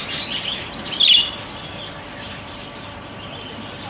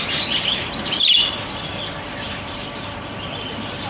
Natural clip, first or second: first